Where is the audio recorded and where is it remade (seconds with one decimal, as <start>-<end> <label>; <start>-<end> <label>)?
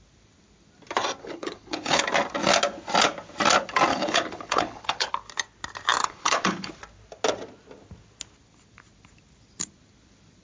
0.0-1.2 recorded; 1.2-2.0 remade; 2.0-3.9 recorded; 3.9-5.1 remade; 5.1-6.0 recorded; 6.0-6.7 remade; 6.7-10.4 recorded